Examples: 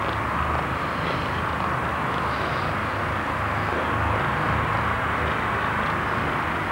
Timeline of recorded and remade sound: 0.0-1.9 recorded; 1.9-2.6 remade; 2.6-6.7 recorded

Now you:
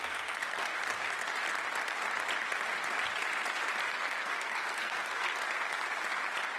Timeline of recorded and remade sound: 0.0-0.7 remade; 0.7-3.9 recorded; 3.9-5.3 remade; 5.3-6.6 recorded

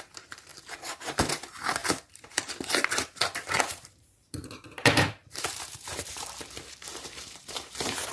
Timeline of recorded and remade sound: 0.0-8.1 remade

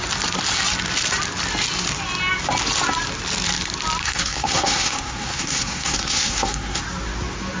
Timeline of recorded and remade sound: 0.0-4.0 recorded; 4.0-6.8 remade; 6.8-7.6 recorded

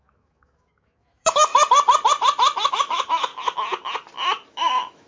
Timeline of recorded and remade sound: 0.0-1.5 remade; 1.5-2.7 recorded; 2.7-3.3 remade; 3.3-4.5 recorded; 4.5-5.1 remade

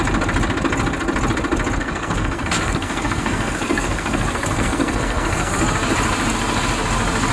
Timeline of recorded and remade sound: 0.0-1.8 recorded; 1.8-5.5 remade; 5.5-7.3 recorded

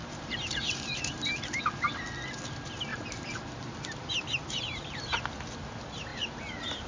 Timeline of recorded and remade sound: 0.0-1.6 remade; 1.6-2.9 recorded; 2.9-5.0 remade; 5.0-6.1 recorded; 6.1-6.9 remade